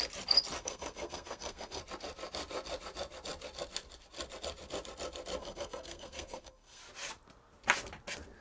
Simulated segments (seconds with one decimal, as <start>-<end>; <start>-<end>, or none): 0.6-1.8; 5.4-6.8